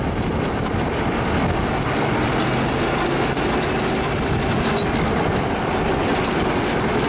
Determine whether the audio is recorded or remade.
recorded